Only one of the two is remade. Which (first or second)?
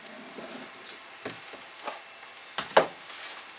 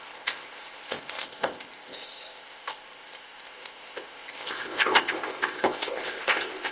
second